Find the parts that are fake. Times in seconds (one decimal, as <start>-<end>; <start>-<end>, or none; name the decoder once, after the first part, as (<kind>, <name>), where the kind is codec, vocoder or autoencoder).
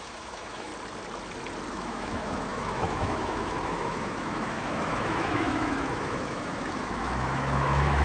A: 0.0-0.7 (autoencoder, DAC-VAE); 1.7-8.0